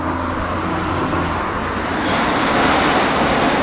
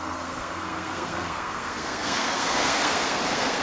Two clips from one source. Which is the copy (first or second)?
second